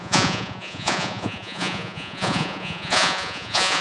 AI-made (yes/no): yes